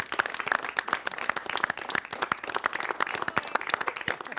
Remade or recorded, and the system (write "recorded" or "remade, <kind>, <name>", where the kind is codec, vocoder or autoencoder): recorded